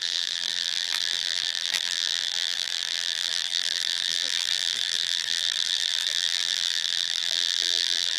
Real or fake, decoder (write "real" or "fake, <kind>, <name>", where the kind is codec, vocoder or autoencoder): fake, vocoder, BigVGAN v2